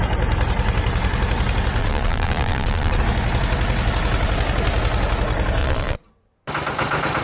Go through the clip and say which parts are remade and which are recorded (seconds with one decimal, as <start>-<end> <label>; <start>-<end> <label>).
0.0-1.8 recorded; 1.8-3.0 remade; 3.0-5.6 recorded; 5.6-6.1 remade; 6.1-7.2 recorded